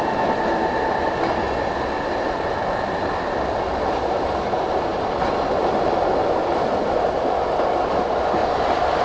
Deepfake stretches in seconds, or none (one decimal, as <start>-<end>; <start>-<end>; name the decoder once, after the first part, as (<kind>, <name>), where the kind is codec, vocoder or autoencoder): 8.4-9.0 (vocoder, BigVGAN v2)